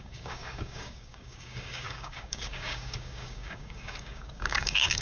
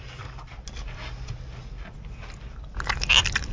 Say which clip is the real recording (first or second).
second